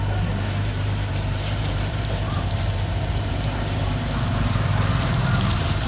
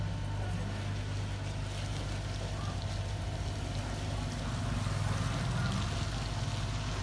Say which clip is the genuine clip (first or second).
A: second